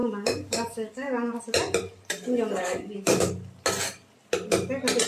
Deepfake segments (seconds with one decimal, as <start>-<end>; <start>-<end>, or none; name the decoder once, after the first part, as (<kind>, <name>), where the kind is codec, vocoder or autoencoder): 0.0-1.4 (codec, DAC); 2.6-3.3